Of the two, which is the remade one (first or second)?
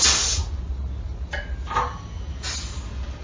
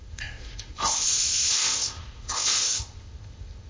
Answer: second